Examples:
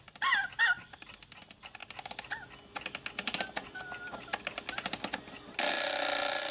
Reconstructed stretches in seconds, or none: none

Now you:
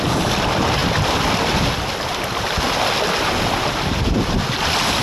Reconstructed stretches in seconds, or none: none

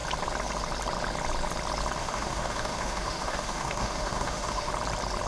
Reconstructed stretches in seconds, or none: 2.0-4.7 (autoencoder, DAC-VAE)

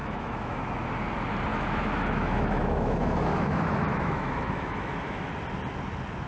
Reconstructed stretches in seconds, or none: 0.0-0.6 (autoencoder, DAC-VAE); 1.5-5.3

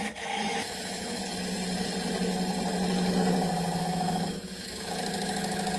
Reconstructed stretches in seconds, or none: 0.0-1.2 (autoencoder, DAC-VAE); 3.8-5.8

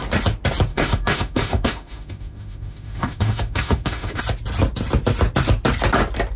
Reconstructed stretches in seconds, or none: 0.7-4.2 (autoencoder, DAC-VAE)

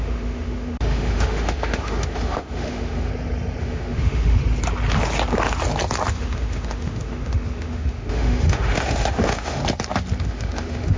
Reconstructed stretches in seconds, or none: 0.0-3.1 (autoencoder, DAC-VAE); 3.6-4.4; 6.1-9.6; 10.2-11.0